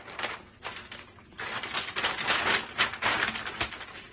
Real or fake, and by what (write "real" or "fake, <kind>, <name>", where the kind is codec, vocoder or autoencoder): real